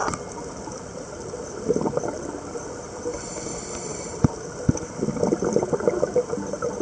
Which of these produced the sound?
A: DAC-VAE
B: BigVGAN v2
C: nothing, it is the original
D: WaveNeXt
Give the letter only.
C